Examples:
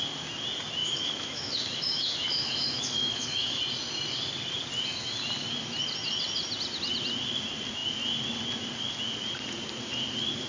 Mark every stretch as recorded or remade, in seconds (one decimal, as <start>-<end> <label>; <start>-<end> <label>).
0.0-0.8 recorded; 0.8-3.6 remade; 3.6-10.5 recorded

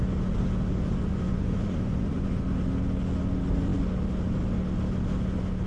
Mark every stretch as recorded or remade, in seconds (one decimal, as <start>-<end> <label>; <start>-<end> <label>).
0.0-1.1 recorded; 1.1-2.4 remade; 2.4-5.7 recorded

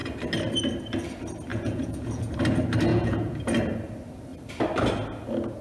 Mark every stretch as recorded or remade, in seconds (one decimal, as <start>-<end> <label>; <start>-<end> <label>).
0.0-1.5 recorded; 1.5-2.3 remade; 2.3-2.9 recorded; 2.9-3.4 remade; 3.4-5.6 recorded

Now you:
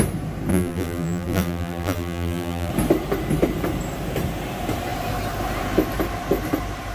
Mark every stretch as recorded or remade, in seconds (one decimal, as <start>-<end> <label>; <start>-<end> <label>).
0.0-0.5 recorded; 0.5-2.7 remade; 2.7-6.9 recorded

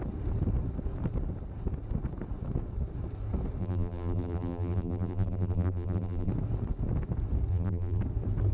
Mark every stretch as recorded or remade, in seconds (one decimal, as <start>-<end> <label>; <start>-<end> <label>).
0.0-3.6 recorded; 3.6-6.3 remade; 6.3-7.5 recorded; 7.5-8.0 remade; 8.0-8.5 recorded

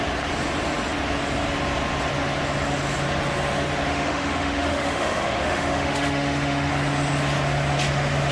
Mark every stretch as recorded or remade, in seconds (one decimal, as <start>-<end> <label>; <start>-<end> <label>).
0.0-3.9 recorded; 3.9-6.7 remade; 6.7-8.3 recorded

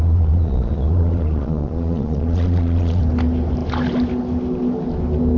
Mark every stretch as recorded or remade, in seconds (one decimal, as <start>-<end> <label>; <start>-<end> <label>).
0.0-3.0 remade; 3.0-5.4 recorded

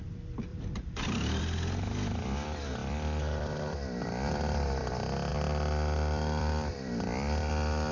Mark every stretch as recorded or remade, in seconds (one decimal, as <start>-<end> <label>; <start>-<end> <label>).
0.0-0.5 recorded; 0.5-1.4 remade; 1.4-2.8 recorded; 2.8-4.8 remade; 4.8-5.3 recorded; 5.3-7.5 remade; 7.5-7.9 recorded